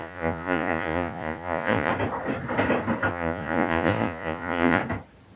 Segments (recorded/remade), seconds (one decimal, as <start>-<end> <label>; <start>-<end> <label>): 0.0-1.9 remade; 1.9-3.1 recorded; 3.1-4.8 remade; 4.8-5.4 recorded